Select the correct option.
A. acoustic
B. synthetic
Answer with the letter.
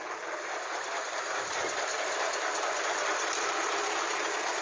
B